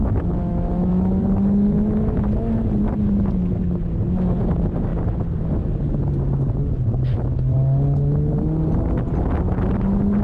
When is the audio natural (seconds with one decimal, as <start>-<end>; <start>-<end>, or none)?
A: 2.2-10.2